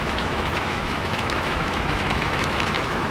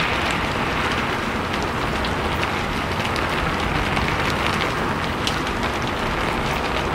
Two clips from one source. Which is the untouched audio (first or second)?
second